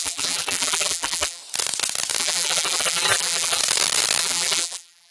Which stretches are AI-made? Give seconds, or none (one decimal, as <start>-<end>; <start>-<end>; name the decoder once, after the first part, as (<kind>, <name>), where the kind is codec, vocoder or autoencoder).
0.0-1.4 (vocoder, BigVGAN v2); 2.2-3.6; 4.2-5.1